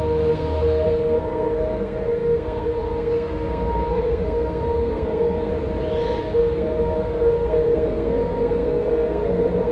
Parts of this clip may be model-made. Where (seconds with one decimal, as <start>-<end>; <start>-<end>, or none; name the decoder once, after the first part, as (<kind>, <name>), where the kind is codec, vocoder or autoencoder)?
0.0-5.5 (codec, SNAC); 6.2-9.7